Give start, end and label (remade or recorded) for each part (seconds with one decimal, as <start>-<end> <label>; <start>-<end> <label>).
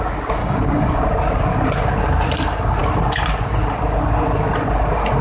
0.0-0.4 recorded; 0.4-1.0 remade; 1.0-5.2 recorded